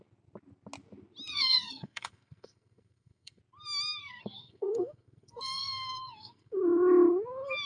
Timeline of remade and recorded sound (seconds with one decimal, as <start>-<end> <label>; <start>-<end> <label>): 0.0-1.3 recorded; 1.3-3.4 remade; 3.4-4.0 recorded; 4.0-6.6 remade; 6.6-7.7 recorded